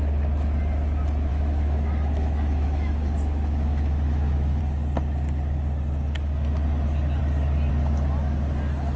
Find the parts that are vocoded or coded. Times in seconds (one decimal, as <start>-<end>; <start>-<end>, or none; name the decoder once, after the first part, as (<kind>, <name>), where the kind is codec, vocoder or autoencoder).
1.3-4.6 (autoencoder, DAC-VAE)

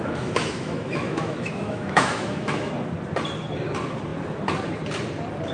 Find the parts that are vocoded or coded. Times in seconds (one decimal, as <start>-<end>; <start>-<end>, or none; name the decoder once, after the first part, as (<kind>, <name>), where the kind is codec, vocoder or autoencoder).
0.0-2.7 (autoencoder, DAC-VAE)

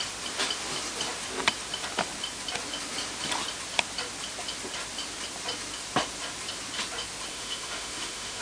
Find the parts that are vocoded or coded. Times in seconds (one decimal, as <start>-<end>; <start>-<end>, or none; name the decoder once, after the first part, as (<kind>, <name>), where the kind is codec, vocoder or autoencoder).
7.3-8.4 (autoencoder, DAC-VAE)

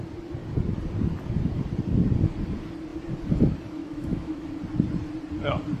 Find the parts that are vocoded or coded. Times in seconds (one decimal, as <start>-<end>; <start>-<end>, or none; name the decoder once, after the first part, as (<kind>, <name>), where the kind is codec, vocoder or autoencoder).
3.8-4.5 (autoencoder, DAC-VAE)

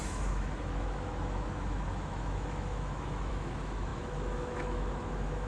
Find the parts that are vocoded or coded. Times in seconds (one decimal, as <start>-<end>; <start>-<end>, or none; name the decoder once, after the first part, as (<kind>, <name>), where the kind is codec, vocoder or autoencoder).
0.0-5.5 (autoencoder, DAC-VAE)